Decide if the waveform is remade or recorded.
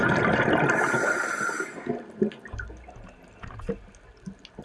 recorded